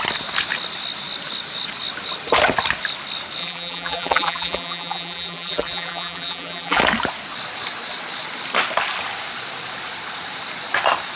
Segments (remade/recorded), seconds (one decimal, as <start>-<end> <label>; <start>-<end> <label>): 0.0-3.4 recorded; 3.4-6.8 remade; 6.8-11.2 recorded